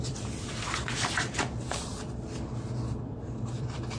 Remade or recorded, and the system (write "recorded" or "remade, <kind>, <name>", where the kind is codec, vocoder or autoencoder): remade, vocoder, BigVGAN v2